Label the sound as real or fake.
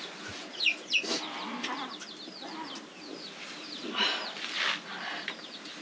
real